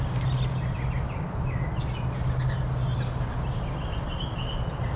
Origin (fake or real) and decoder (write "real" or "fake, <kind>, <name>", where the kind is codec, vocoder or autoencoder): real